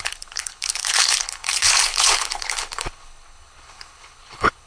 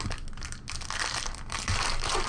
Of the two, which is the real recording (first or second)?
second